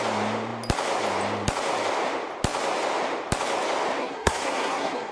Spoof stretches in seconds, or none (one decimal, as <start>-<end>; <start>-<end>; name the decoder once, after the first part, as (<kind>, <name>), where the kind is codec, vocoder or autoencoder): 4.0-5.1 (codec, SNAC)